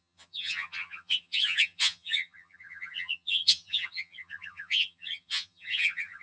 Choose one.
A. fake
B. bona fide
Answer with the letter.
A